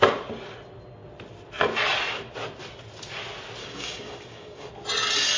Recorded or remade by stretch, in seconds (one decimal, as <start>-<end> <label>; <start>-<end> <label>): 0.0-3.6 recorded; 3.6-4.7 remade; 4.7-5.4 recorded